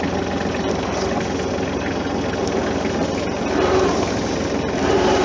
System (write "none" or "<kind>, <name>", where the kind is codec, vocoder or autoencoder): none